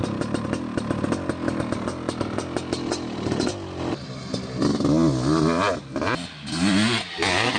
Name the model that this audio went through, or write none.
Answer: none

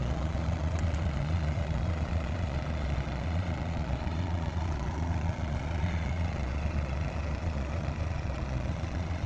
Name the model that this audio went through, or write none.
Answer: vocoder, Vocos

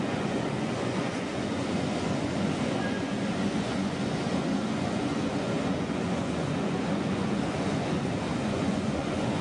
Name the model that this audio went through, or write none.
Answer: vocoder, Vocos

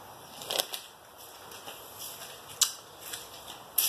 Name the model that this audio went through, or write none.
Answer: none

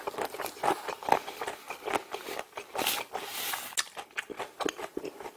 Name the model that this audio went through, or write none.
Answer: none